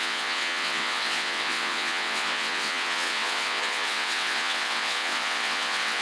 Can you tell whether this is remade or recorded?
remade